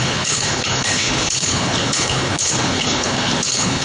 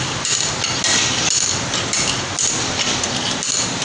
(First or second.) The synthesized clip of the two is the first